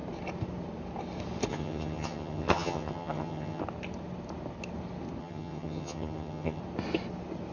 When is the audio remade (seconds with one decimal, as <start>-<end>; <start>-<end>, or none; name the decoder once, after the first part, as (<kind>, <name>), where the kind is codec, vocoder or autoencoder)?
1.5-3.6 (vocoder, HiFi-GAN); 5.2-6.6